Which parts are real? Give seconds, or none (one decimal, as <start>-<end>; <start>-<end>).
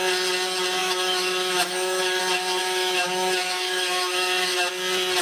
0.0-0.8; 2.2-2.6; 4.7-5.2